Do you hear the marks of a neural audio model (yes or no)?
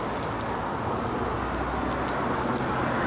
no